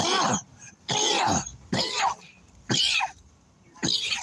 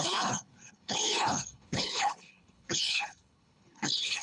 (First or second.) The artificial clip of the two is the second